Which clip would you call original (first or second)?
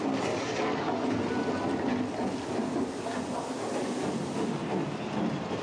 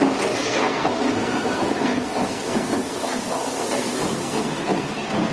first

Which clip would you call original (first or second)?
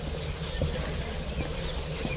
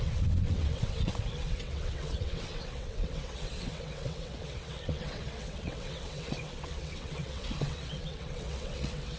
first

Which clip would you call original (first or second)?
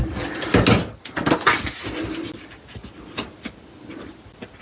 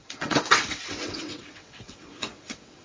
first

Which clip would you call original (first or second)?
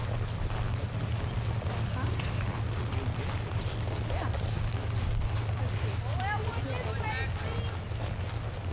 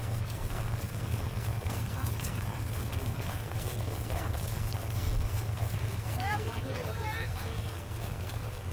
first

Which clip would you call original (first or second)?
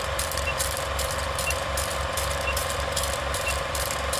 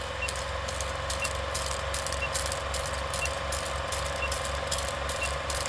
second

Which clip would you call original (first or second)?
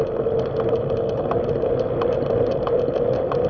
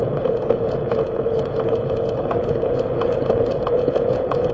first